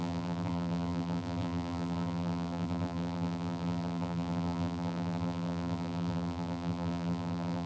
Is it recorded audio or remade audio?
remade